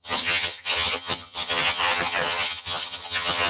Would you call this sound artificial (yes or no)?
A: yes